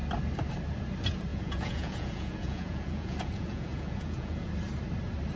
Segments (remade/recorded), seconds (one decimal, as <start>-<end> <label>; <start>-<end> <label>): 0.0-1.3 recorded; 1.3-4.5 remade; 4.5-5.4 recorded